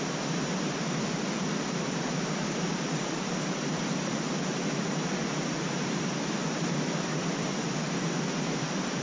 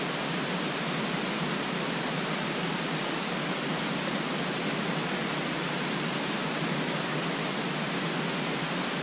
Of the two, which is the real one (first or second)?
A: second